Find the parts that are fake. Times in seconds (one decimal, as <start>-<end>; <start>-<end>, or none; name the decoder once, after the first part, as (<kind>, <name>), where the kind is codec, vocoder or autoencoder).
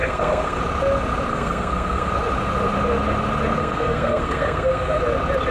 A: 0.0-0.6 (codec, SNAC); 1.3-2.1; 3.6-5.0